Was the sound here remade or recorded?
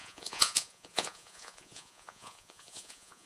remade